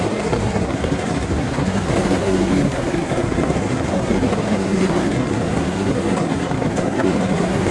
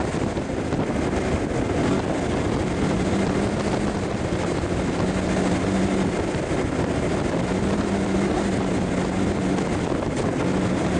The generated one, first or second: first